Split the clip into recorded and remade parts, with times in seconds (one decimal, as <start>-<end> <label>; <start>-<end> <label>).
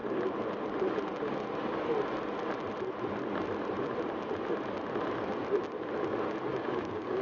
0.0-6.5 recorded; 6.5-7.2 remade